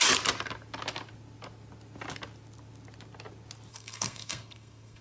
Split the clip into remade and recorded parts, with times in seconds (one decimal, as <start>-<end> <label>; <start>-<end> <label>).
0.0-3.7 recorded; 3.7-5.0 remade